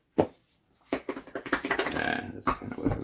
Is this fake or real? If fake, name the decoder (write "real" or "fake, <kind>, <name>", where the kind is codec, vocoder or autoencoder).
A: real